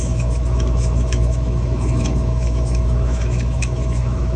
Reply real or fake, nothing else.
fake